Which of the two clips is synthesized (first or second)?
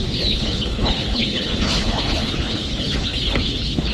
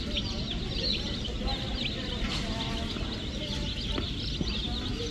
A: first